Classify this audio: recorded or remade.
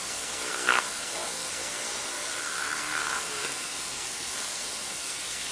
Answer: remade